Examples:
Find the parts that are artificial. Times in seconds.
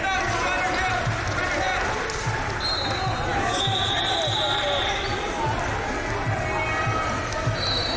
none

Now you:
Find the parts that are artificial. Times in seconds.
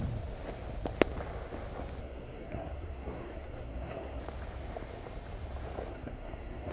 2.0-4.2 (codec, SNAC); 5.9-6.7